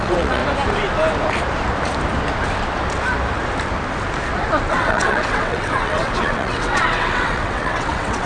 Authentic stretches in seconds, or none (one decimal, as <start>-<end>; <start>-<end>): 0.4-4.7